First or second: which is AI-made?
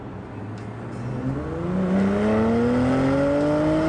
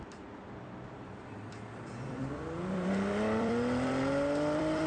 second